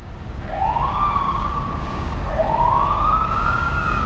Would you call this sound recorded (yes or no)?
no